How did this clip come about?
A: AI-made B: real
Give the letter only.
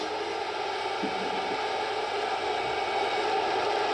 B